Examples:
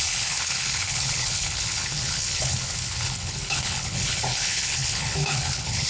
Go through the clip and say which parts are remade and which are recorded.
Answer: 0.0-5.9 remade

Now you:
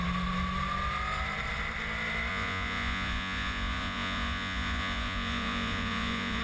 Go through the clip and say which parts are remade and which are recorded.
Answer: 0.0-2.3 recorded; 2.3-6.4 remade

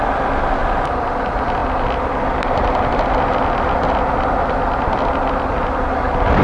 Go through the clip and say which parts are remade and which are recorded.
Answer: 0.0-0.6 recorded; 0.6-1.2 remade; 1.2-6.4 recorded

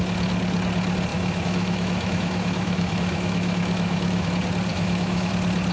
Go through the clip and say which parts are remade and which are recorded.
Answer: 0.0-1.1 recorded; 1.1-4.3 remade; 4.3-4.7 recorded; 4.7-5.3 remade; 5.3-5.7 recorded

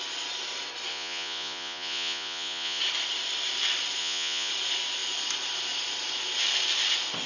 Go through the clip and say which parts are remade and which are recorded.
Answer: 0.0-0.9 recorded; 0.9-2.8 remade; 2.8-4.0 recorded; 4.0-4.5 remade; 4.5-7.3 recorded

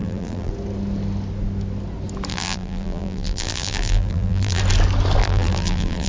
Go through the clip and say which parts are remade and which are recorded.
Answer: 0.0-0.5 remade; 0.5-2.3 recorded; 2.3-4.6 remade; 4.6-5.2 recorded; 5.2-6.1 remade

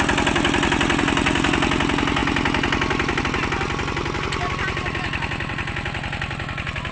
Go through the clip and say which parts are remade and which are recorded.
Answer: 0.0-6.9 recorded